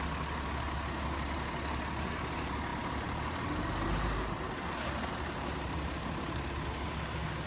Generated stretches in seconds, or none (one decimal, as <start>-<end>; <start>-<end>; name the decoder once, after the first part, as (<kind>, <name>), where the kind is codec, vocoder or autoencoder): 2.7-6.9 (vocoder, BigVGAN v2)